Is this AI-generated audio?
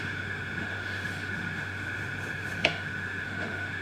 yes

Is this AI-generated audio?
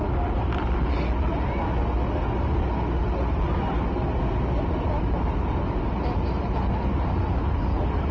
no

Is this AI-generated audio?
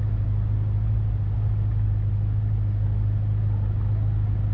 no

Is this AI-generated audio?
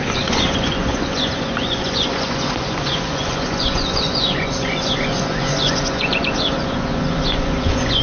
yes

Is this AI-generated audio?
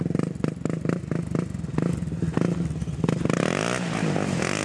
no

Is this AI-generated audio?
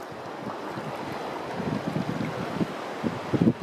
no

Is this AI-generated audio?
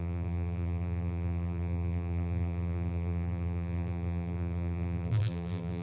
yes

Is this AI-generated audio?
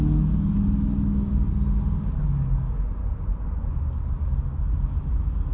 no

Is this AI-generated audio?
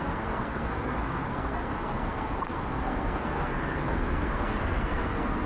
yes